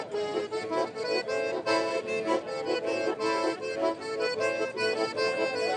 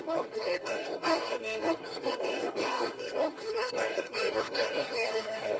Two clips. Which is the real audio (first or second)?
first